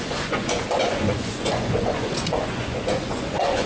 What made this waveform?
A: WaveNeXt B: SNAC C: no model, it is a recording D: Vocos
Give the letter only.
D